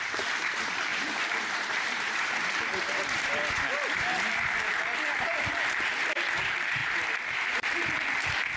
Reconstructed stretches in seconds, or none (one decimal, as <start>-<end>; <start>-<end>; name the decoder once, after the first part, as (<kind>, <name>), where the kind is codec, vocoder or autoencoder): 0.9-3.5 (vocoder, BigVGAN v2)